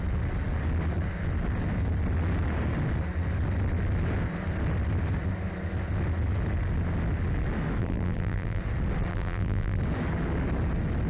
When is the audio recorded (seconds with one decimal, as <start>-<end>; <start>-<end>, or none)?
0.0-7.8; 8.6-9.1; 9.8-11.1